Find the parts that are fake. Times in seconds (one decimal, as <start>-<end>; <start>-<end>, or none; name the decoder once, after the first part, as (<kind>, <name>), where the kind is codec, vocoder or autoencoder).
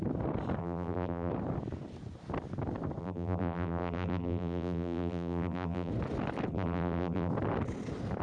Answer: 0.6-1.3 (vocoder, BigVGAN v2); 3.0-5.9; 6.5-7.3